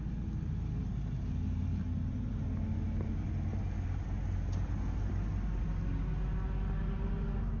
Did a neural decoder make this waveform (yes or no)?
no